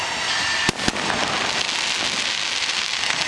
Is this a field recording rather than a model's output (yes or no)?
yes